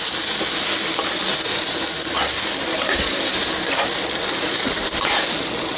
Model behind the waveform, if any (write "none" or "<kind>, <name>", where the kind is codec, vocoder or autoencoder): none